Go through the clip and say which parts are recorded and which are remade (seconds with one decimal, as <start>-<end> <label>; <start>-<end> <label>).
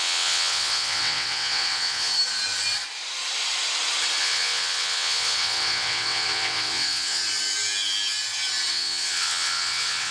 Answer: 0.0-2.1 remade; 2.1-4.2 recorded; 4.2-7.2 remade; 7.2-8.7 recorded; 8.7-10.1 remade